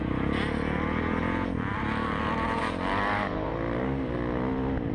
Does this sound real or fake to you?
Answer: real